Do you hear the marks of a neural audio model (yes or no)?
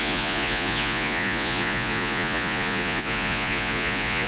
yes